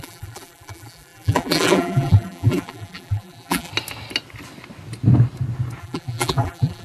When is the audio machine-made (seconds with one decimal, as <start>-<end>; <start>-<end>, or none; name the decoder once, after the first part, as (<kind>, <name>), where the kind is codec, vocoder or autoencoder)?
0.0-3.7 (vocoder, BigVGAN v2); 5.8-6.8